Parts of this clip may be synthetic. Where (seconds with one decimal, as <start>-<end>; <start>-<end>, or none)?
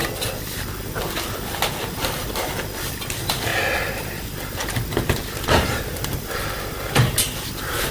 none